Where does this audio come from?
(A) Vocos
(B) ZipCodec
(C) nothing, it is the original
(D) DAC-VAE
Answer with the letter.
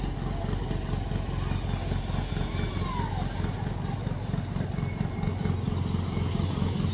C